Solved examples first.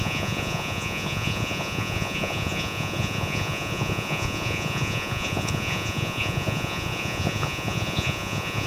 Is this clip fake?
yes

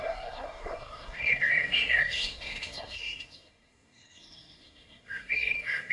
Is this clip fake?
yes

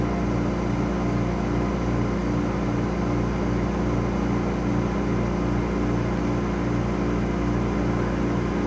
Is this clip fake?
no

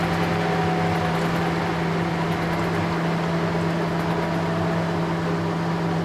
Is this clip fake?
no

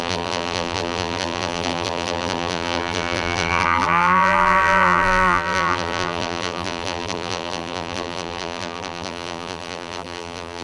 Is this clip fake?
yes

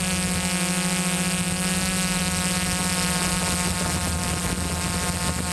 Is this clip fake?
no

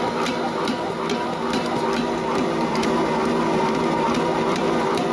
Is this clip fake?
no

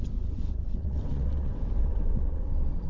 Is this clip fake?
yes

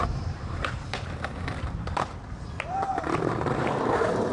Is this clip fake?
yes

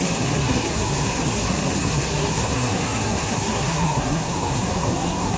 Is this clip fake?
yes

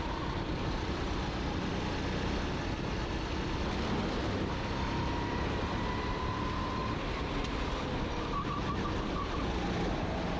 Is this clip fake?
no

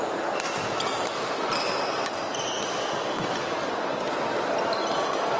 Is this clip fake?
no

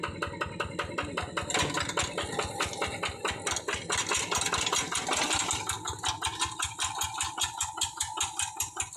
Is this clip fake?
no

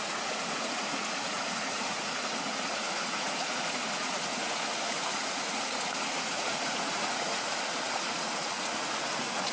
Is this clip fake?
yes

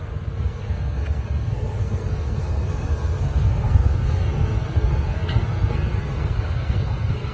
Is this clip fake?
yes